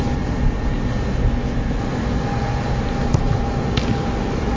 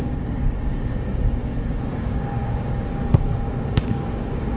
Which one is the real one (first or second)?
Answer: first